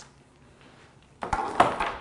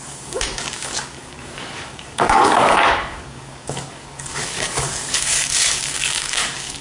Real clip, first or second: first